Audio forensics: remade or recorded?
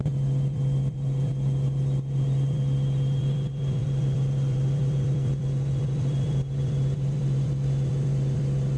remade